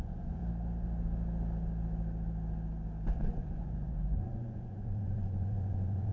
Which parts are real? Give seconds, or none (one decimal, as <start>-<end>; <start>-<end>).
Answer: 0.4-3.1